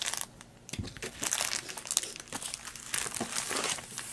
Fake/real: real